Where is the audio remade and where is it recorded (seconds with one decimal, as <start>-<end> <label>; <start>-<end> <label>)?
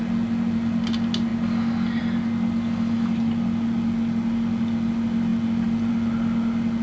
0.0-6.8 recorded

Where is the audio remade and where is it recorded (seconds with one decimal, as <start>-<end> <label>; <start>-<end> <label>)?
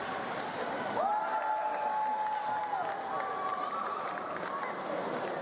0.0-3.5 recorded; 3.5-4.6 remade; 4.6-5.4 recorded